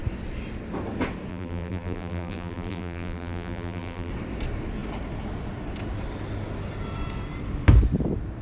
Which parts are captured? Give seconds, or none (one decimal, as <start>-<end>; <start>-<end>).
0.0-1.3; 4.1-8.4